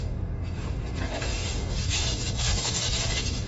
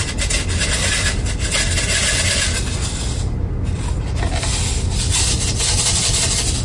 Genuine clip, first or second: second